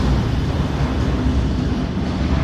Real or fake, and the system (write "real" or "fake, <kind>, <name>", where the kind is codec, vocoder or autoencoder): real